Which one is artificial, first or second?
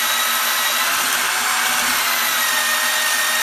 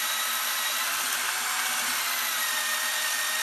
second